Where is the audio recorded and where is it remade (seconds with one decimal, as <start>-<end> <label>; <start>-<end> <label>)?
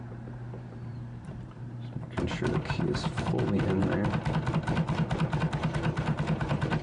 0.0-3.8 remade; 3.8-4.5 recorded; 4.5-6.8 remade